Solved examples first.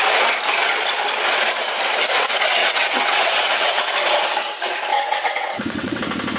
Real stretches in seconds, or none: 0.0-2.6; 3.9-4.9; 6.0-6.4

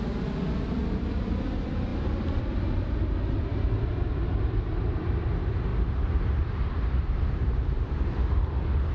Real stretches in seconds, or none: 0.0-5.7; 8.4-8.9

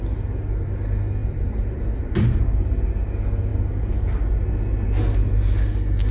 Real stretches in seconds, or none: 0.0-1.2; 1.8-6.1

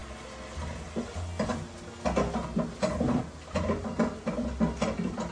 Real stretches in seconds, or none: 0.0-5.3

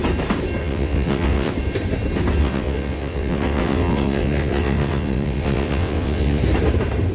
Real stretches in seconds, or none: 0.0-0.6; 1.5-2.4; 6.4-7.1

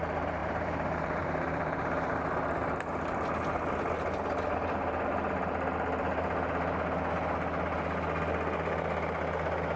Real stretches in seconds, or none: 0.0-0.4; 2.2-9.8